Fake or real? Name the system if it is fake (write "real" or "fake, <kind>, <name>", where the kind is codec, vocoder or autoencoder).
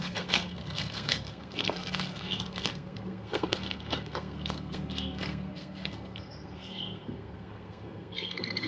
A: fake, codec, SNAC